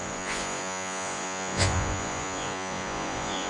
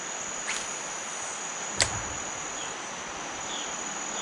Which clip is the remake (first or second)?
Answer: first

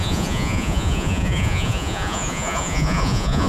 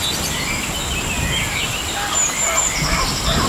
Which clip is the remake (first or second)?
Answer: first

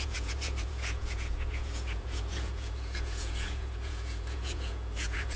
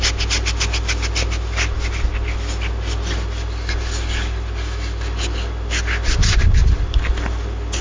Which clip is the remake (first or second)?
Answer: first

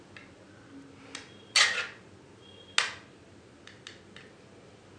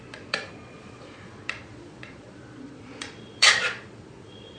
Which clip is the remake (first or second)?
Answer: second